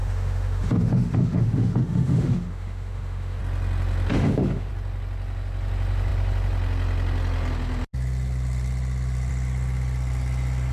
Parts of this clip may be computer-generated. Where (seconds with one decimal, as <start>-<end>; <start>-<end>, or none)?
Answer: 0.0-3.4; 4.1-4.7